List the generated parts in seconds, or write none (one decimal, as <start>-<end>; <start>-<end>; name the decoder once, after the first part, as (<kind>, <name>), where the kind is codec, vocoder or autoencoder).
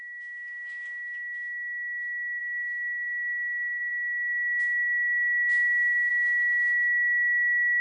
2.4-6.1 (codec, SNAC)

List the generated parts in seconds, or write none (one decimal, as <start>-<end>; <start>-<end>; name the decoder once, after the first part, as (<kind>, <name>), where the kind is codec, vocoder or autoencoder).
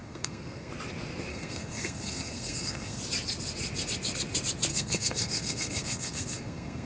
0.0-0.7 (codec, SNAC); 1.3-3.0; 4.7-6.9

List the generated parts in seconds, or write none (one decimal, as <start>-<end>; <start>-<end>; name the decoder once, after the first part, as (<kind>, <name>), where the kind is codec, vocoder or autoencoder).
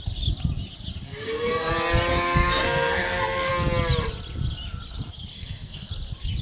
1.1-1.7 (codec, SNAC); 2.1-3.5; 5.3-5.9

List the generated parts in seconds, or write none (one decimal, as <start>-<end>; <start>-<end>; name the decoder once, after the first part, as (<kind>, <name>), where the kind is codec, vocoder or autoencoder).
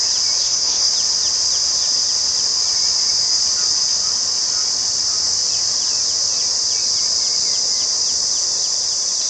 0.4-0.9 (codec, SNAC)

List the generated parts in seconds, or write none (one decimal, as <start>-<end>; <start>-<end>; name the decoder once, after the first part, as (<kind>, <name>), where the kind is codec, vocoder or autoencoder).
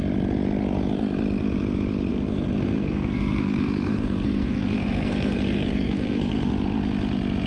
2.1-6.5 (codec, SNAC)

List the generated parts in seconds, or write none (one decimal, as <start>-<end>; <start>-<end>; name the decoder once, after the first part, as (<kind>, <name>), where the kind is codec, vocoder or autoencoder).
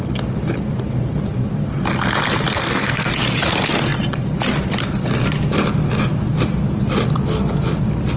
2.5-3.1 (codec, SNAC)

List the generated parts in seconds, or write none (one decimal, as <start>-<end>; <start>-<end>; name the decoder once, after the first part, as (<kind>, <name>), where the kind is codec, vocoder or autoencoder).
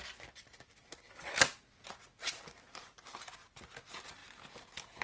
none